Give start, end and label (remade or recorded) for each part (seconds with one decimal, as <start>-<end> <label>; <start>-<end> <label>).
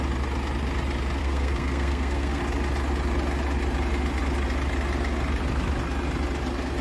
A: 0.0-1.2 recorded; 1.2-2.4 remade; 2.4-6.8 recorded